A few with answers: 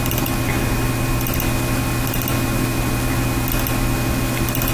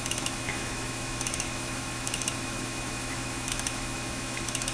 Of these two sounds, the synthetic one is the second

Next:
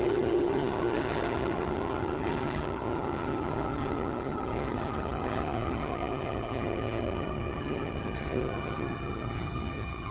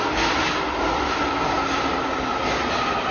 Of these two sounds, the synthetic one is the first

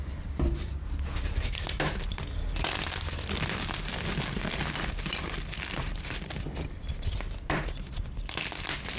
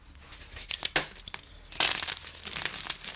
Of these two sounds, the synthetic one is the first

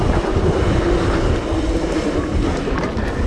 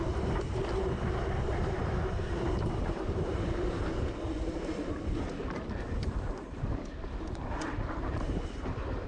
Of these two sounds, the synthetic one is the second